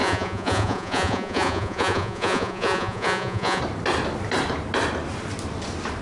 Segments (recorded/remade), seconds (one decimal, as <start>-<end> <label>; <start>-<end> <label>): 0.0-3.6 remade; 3.6-6.0 recorded